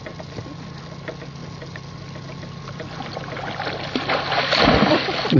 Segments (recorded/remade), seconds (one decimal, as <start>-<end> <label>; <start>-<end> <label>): 0.0-5.4 recorded